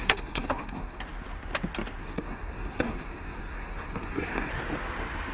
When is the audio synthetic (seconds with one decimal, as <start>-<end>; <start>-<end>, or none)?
0.0-1.0; 2.0-4.5